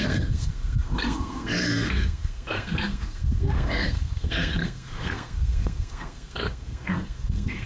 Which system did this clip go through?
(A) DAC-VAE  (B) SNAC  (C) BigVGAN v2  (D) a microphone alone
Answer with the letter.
B